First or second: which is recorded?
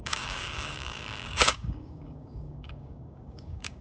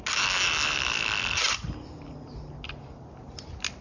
second